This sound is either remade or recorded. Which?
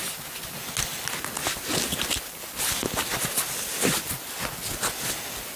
recorded